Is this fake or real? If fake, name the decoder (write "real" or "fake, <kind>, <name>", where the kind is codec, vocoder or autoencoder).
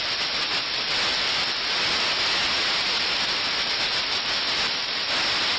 real